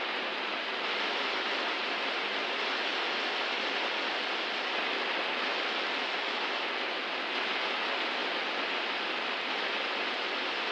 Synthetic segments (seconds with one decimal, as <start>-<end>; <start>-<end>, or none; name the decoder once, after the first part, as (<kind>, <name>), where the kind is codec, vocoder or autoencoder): none